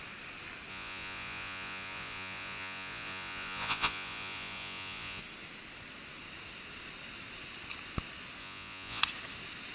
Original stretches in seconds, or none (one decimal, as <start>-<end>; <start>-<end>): 0.0-0.7; 5.2-8.4; 9.0-9.7